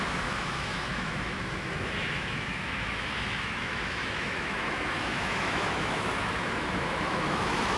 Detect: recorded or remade remade